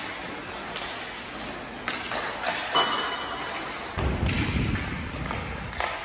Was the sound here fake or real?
real